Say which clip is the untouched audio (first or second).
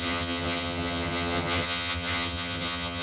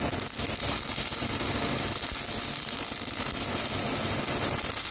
second